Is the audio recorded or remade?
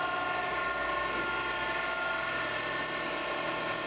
recorded